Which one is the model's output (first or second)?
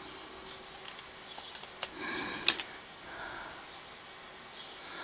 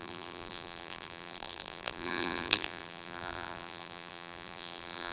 second